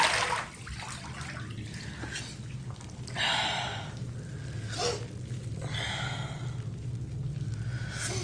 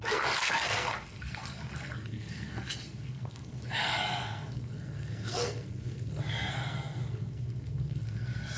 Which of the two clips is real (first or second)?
first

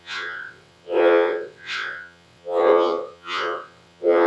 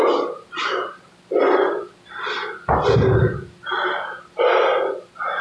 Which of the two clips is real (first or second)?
second